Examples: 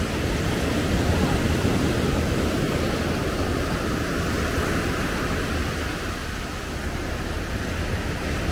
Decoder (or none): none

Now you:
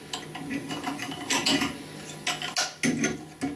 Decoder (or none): none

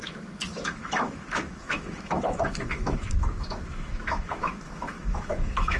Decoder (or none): autoencoder, DAC-VAE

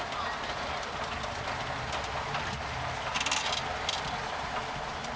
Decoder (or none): none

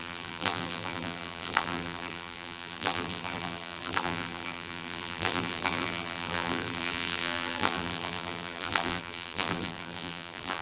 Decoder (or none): vocoder, BigVGAN v2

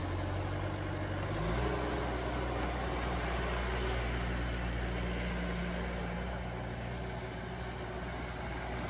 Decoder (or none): none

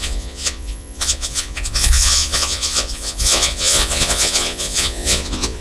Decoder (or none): vocoder, Vocos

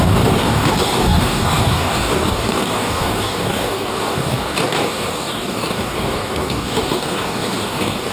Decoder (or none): codec, DAC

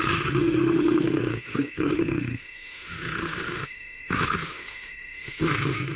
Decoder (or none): autoencoder, DAC-VAE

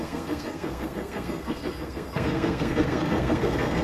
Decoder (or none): codec, SNAC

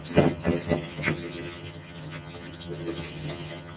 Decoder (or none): vocoder, HiFi-GAN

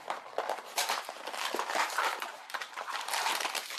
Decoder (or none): vocoder, BigVGAN v2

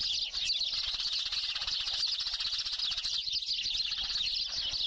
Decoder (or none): none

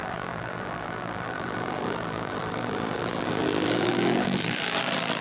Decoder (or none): vocoder, BigVGAN v2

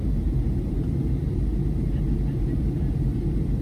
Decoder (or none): vocoder, BigVGAN v2